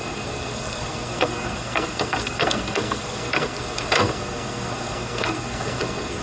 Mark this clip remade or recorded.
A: remade